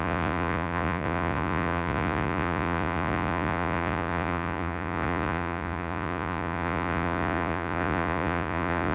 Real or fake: fake